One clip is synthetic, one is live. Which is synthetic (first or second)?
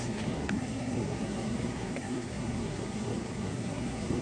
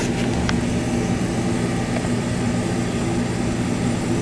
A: first